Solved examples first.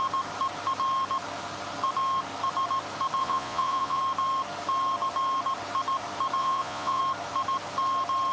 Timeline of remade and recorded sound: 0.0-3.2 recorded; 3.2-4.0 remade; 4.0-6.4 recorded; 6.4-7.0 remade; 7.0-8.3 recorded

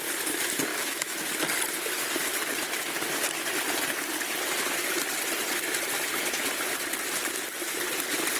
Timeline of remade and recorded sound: 0.0-0.7 recorded; 0.7-1.3 remade; 1.3-8.4 recorded

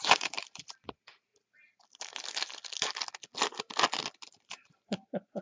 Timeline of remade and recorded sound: 0.0-1.3 remade; 1.3-4.5 recorded; 4.5-5.4 remade

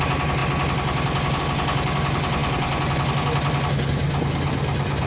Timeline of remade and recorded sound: 0.0-5.1 recorded

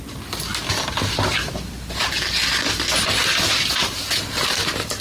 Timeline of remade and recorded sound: 0.0-5.0 recorded

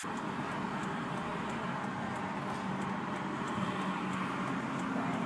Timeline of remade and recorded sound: 0.0-5.3 recorded

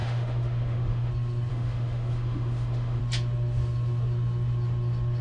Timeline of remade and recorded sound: 0.0-1.1 remade; 1.1-1.5 recorded; 1.5-3.0 remade; 3.0-5.2 recorded

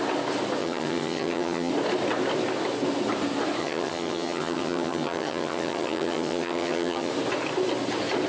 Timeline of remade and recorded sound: 0.0-0.6 recorded; 0.6-1.7 remade; 1.7-3.6 recorded; 3.6-7.1 remade; 7.1-8.3 recorded